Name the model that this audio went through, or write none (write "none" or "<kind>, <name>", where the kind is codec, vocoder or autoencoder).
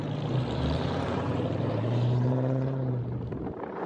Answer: vocoder, BigVGAN v2